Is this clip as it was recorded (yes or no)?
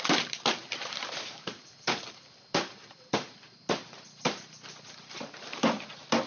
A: no